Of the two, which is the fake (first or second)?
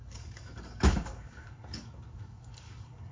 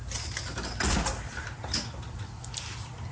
first